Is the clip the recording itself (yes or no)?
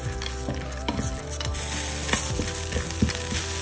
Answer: yes